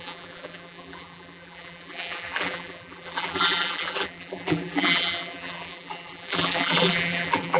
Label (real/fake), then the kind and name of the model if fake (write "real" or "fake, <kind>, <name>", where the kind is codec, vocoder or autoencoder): fake, vocoder, BigVGAN v2